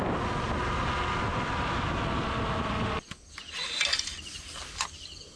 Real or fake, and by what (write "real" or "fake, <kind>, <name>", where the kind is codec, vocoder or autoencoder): real